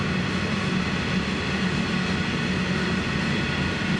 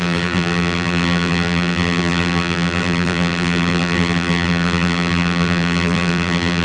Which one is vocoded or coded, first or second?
second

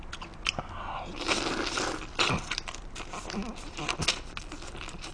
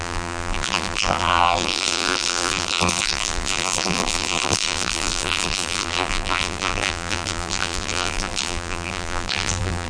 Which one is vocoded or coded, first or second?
second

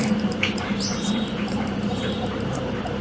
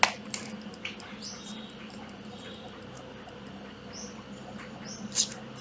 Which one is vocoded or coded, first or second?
first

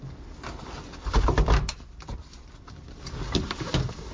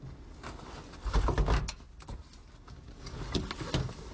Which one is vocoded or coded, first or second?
first